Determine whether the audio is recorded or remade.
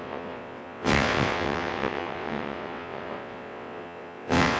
remade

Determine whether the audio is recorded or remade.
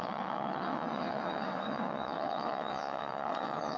remade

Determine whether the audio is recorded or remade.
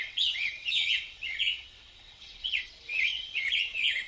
remade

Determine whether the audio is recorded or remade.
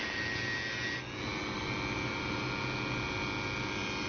recorded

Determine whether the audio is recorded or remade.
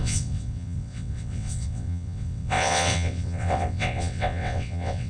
remade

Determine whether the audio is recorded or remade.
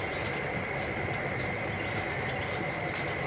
recorded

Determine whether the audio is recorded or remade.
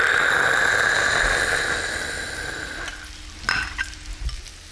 recorded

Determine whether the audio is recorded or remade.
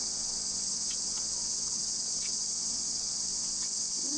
remade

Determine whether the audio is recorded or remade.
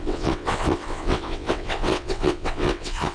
remade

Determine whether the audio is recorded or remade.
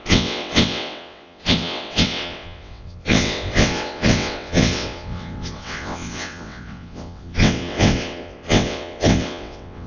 remade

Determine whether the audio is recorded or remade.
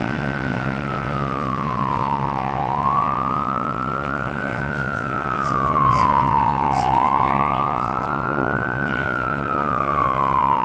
remade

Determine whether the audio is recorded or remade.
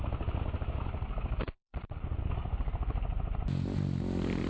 recorded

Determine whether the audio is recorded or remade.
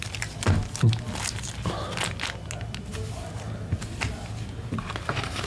recorded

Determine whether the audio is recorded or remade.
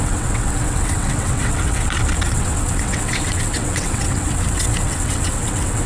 remade